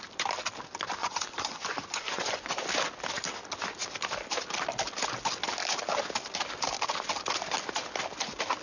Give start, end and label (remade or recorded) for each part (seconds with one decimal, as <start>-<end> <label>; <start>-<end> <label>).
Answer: 0.0-1.0 recorded; 1.0-2.7 remade; 2.7-8.6 recorded